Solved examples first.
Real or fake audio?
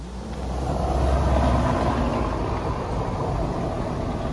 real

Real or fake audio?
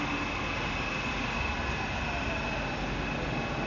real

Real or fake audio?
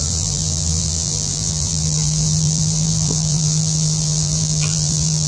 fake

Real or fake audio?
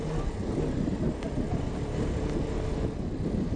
real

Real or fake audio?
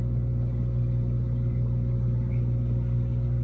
real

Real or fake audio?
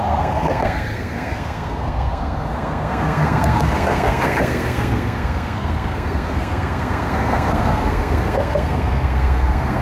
fake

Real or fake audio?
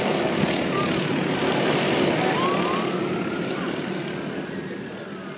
real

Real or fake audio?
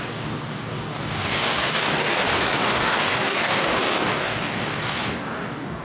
fake